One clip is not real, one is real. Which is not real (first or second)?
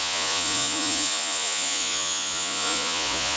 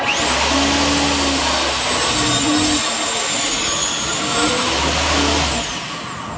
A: first